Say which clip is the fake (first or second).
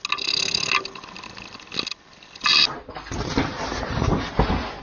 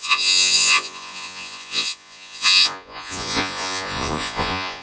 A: second